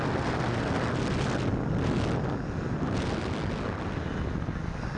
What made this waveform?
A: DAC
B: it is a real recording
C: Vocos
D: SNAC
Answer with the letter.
B